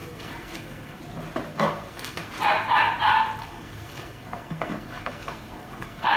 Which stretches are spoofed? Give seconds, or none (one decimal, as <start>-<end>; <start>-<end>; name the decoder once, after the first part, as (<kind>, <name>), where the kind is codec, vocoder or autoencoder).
0.0-1.0 (codec, SNAC); 1.5-2.3; 3.4-6.2